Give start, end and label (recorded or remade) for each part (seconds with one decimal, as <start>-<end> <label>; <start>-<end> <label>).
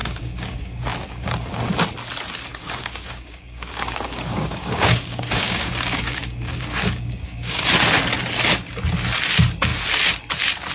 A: 0.0-1.6 remade; 1.6-2.5 recorded; 2.5-7.6 remade; 7.6-10.7 recorded